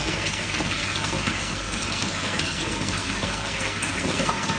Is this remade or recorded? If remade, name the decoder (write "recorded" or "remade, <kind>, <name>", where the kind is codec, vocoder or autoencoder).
remade, codec, SNAC